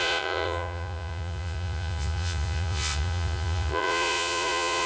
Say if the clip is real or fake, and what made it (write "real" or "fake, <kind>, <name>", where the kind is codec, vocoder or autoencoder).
fake, vocoder, Vocos